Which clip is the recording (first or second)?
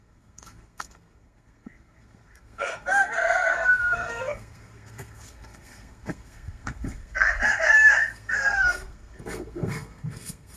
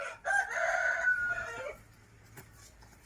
second